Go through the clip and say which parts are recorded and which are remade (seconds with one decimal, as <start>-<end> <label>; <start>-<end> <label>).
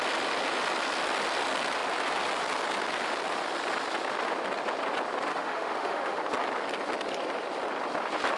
0.0-5.3 recorded; 5.3-6.2 remade; 6.2-8.4 recorded